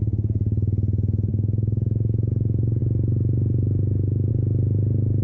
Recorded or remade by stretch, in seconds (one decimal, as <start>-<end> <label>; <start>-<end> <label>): 0.0-1.3 recorded; 1.3-2.3 remade; 2.3-5.2 recorded